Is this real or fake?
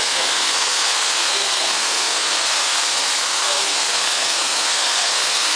fake